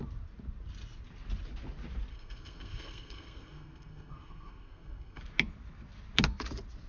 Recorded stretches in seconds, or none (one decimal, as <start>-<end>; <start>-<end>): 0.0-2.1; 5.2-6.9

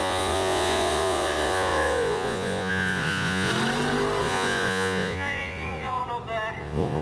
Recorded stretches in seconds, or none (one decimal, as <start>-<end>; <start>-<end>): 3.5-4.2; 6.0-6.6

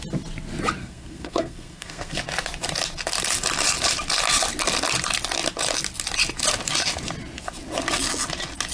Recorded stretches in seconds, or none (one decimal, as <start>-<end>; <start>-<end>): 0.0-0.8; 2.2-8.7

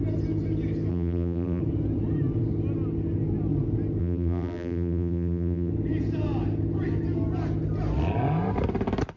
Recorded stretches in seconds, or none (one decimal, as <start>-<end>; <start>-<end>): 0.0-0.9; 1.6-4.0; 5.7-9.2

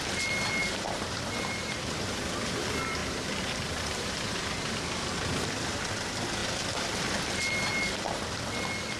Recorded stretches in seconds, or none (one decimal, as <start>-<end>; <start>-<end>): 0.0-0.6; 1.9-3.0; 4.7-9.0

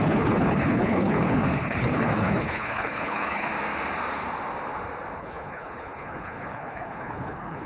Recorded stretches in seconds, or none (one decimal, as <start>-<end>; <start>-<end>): 3.5-5.2